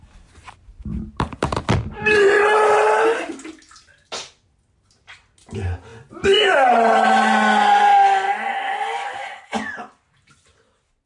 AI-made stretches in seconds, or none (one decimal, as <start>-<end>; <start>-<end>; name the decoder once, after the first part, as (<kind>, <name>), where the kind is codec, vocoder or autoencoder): none